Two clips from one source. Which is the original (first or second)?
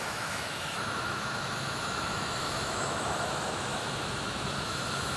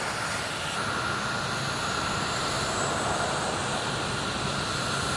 second